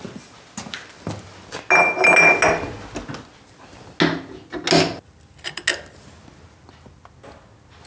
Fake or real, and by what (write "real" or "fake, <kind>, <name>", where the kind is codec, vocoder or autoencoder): real